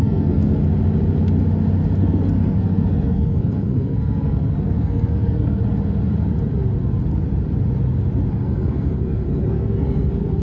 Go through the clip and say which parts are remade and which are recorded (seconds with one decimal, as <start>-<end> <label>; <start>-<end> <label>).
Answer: 0.0-0.6 remade; 0.6-2.0 recorded; 2.0-5.6 remade; 5.6-8.3 recorded; 8.3-10.4 remade